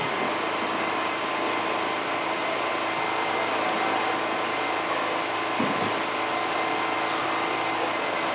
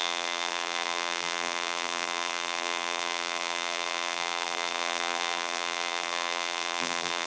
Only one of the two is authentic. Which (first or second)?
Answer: first